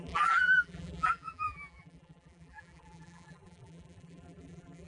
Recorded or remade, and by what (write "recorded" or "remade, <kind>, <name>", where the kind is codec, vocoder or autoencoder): remade, vocoder, BigVGAN v2